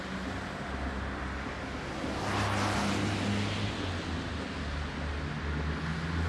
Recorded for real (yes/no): yes